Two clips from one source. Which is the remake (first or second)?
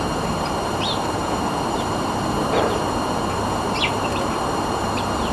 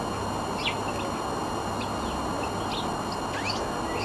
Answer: first